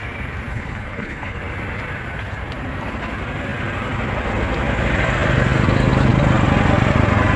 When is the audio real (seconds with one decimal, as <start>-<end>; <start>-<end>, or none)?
0.0-0.5; 1.4-7.4